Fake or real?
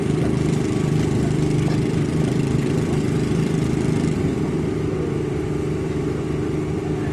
fake